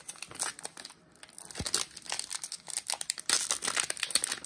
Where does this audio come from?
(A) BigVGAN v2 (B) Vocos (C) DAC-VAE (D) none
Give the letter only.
D